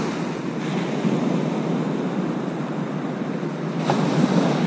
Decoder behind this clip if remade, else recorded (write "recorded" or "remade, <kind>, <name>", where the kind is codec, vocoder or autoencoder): recorded